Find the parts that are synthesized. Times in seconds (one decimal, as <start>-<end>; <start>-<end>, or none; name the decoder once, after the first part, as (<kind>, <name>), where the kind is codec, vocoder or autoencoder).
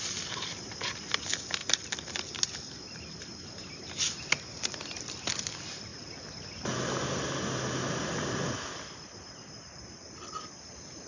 none